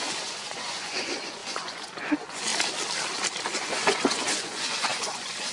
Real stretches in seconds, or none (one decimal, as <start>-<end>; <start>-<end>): 2.5-3.5